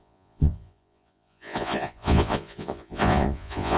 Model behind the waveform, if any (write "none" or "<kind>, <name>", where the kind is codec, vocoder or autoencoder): vocoder, Vocos